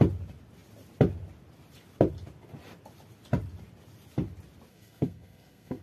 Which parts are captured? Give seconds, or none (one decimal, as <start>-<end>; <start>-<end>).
0.0-4.7